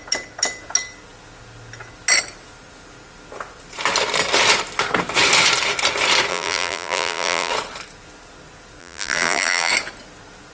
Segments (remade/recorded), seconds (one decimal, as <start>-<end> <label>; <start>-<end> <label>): 0.0-6.3 recorded; 6.3-7.5 remade; 7.5-8.8 recorded; 8.8-9.7 remade; 9.7-10.5 recorded